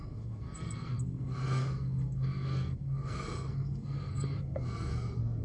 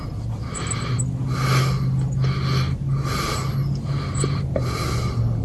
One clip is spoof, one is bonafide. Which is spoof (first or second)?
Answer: first